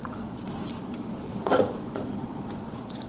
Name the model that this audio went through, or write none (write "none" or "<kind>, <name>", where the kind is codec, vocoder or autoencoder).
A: vocoder, Vocos